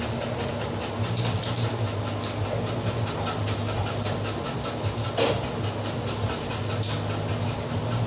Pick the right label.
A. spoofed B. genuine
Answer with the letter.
B